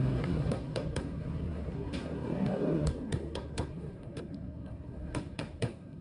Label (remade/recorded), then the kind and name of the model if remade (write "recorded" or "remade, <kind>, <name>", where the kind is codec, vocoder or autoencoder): remade, codec, SNAC